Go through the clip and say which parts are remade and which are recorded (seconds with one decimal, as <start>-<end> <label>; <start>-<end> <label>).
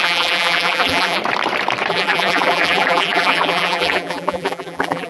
0.0-1.2 remade; 1.2-1.9 recorded; 1.9-5.1 remade